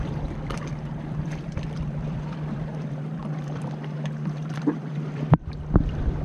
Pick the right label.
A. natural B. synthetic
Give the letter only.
B